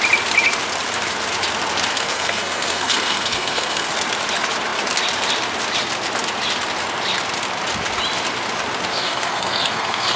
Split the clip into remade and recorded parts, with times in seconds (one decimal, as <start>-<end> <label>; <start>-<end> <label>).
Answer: 0.0-1.9 recorded; 1.9-3.9 remade; 3.9-8.9 recorded; 8.9-10.2 remade